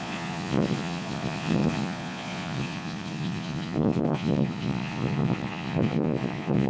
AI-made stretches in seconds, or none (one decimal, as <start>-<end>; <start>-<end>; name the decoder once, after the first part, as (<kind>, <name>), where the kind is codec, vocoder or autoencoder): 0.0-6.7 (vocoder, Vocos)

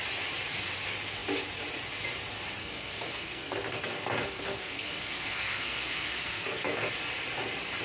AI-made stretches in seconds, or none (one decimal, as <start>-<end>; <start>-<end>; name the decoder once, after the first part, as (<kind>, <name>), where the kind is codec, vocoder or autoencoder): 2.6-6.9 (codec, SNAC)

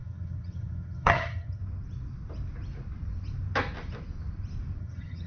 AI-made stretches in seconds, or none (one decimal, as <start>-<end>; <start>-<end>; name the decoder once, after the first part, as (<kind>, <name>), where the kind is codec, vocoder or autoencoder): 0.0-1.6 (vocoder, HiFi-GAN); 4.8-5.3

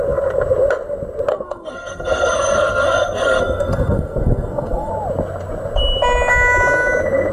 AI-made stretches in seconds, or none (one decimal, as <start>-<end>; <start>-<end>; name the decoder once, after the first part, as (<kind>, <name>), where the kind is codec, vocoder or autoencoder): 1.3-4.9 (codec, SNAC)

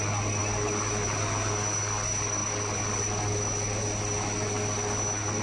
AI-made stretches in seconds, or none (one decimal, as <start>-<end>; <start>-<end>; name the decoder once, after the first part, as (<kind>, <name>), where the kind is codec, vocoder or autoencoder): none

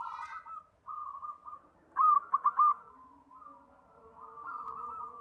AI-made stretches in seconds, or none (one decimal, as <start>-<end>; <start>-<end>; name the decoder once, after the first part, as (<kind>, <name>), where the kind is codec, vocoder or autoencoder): none

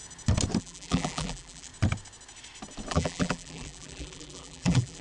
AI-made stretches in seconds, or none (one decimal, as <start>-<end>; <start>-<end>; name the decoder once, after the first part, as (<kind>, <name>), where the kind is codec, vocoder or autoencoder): 0.6-1.7 (vocoder, BigVGAN v2); 2.9-5.0